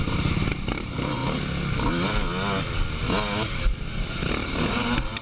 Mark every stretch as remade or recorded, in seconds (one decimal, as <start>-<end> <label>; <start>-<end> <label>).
0.0-1.2 remade; 1.2-4.3 recorded; 4.3-5.2 remade